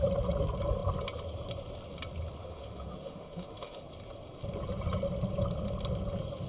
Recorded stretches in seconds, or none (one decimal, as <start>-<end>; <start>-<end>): 0.0-2.4; 3.8-6.5